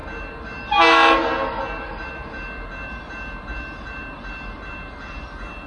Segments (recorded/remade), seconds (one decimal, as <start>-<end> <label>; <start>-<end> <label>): 0.0-5.7 recorded